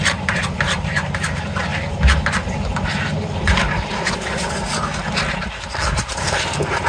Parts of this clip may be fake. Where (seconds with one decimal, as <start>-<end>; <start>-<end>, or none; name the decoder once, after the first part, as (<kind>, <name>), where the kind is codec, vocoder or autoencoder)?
0.0-1.7 (vocoder, BigVGAN v2); 3.6-4.9